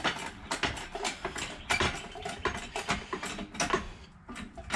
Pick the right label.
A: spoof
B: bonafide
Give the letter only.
B